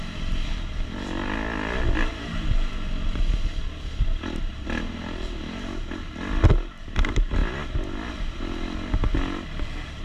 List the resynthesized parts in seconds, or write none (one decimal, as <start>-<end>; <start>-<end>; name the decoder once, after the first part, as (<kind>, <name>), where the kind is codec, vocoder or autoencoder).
none